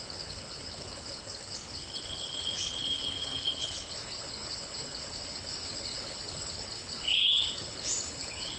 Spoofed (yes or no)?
yes